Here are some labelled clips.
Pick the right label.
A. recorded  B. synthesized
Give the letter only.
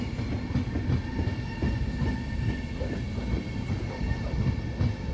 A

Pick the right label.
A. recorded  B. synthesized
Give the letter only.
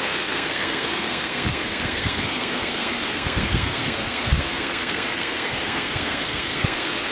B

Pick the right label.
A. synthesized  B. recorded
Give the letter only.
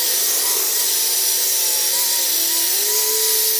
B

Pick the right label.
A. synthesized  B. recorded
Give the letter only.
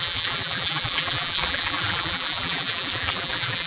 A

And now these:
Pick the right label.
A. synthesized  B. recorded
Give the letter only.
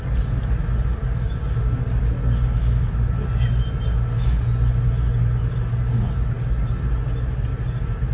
B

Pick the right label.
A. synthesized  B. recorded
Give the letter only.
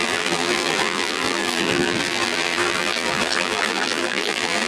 A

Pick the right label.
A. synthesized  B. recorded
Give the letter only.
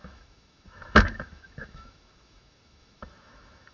A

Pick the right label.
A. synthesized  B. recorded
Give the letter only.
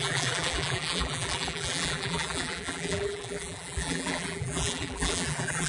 A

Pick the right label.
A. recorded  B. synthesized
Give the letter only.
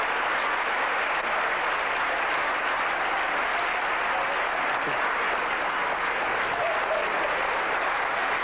A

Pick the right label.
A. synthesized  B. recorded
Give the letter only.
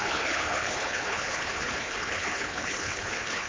A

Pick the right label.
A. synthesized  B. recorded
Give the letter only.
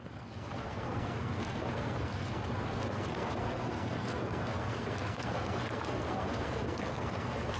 A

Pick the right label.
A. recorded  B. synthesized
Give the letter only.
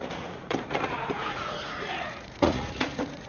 B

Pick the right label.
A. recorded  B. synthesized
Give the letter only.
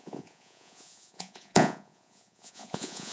B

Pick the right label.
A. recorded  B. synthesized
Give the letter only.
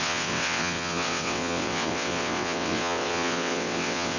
B